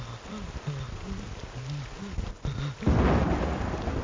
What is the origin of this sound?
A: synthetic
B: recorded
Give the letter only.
B